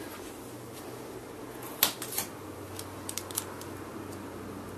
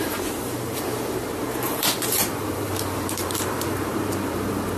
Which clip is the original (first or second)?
first